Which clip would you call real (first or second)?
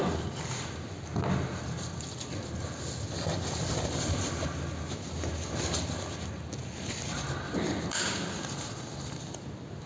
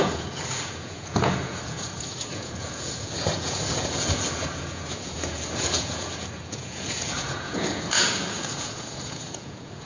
first